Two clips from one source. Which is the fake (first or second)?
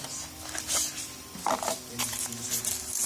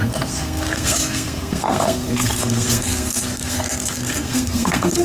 second